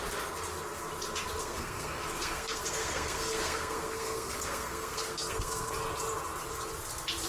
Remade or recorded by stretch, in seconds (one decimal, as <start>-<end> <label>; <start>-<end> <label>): 0.0-1.4 recorded; 1.4-5.7 remade; 5.7-7.3 recorded

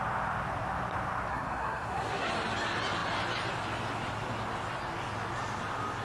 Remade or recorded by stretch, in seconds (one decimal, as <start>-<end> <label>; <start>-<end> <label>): 0.0-1.3 recorded; 1.3-2.3 remade; 2.3-6.0 recorded

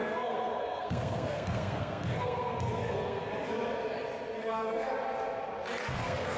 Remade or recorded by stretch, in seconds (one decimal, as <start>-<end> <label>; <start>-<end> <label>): 0.0-3.3 remade; 3.3-4.4 recorded; 4.4-4.9 remade; 4.9-5.9 recorded; 5.9-6.4 remade

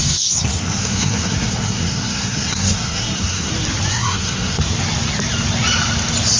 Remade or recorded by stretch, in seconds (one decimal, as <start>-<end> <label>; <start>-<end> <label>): 0.0-3.5 remade; 3.5-3.9 recorded; 3.9-4.6 remade; 4.6-6.4 recorded

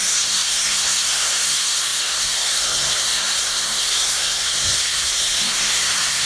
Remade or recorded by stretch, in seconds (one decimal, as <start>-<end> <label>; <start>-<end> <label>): 0.0-6.3 remade

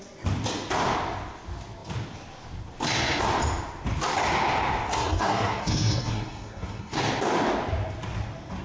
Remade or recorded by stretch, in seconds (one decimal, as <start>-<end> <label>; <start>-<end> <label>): 0.0-4.9 recorded; 4.9-7.0 remade; 7.0-8.6 recorded

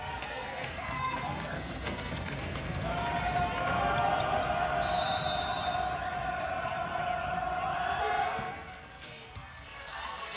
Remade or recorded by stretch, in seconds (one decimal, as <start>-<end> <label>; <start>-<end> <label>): 0.0-2.9 remade; 2.9-8.0 recorded; 8.0-10.4 remade